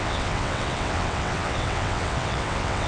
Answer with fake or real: fake